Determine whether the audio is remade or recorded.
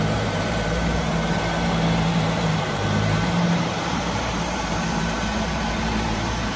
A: remade